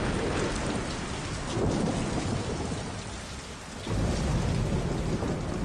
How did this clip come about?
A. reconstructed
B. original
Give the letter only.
B